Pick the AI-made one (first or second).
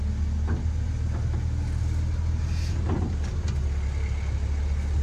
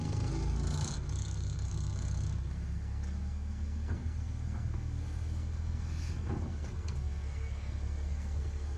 second